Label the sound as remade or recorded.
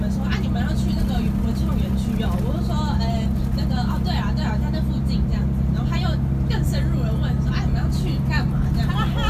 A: recorded